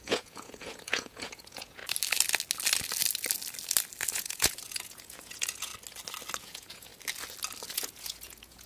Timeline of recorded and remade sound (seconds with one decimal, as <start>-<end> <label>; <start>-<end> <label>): 0.0-1.8 remade; 1.8-4.1 recorded; 4.1-5.7 remade; 5.7-6.4 recorded; 6.4-6.9 remade; 6.9-7.7 recorded; 7.7-8.7 remade